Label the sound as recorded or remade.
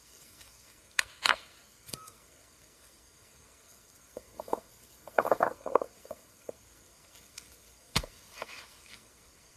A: remade